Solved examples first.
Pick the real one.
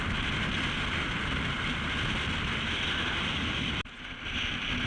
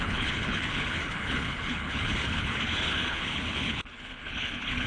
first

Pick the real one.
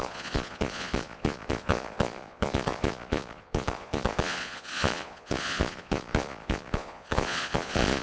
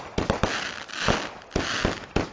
second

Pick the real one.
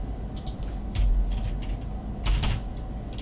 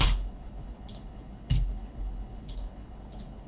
first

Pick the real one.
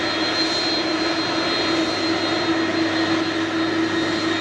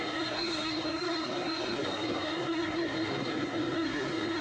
first